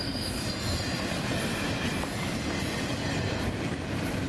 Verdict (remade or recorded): remade